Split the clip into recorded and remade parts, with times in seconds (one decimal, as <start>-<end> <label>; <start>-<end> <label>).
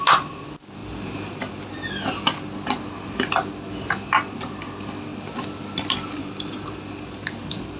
0.0-0.8 recorded; 0.8-1.5 remade; 1.5-6.2 recorded; 6.2-6.8 remade; 6.8-7.8 recorded